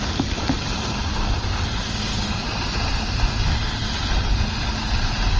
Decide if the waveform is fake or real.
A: real